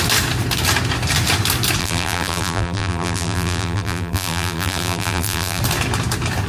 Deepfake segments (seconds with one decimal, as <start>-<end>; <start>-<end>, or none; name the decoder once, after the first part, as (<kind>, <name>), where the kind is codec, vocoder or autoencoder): 1.8-5.6 (vocoder, BigVGAN v2)